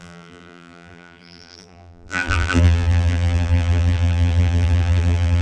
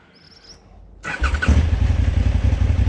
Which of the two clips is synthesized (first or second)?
first